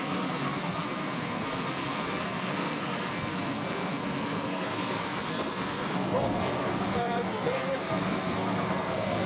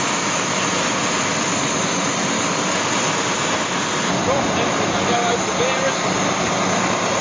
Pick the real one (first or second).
second